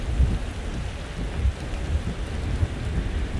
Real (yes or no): yes